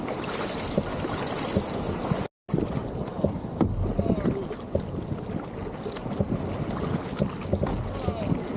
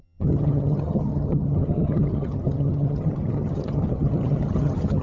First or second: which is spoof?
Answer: second